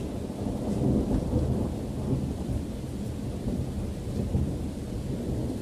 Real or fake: real